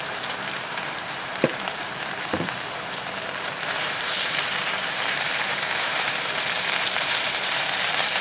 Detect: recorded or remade remade